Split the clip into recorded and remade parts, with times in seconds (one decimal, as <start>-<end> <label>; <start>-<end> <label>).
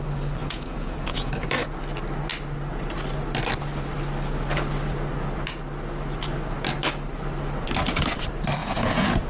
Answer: 0.0-0.4 recorded; 0.4-1.3 remade; 1.3-8.6 recorded; 8.6-9.3 remade